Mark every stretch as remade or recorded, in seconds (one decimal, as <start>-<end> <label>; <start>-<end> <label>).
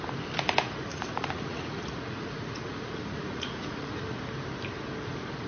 0.0-0.9 recorded; 0.9-4.0 remade; 4.0-5.5 recorded